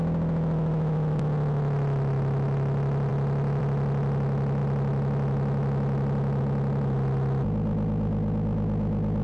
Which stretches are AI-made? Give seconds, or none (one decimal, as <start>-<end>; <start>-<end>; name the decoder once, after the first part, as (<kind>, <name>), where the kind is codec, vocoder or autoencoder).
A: none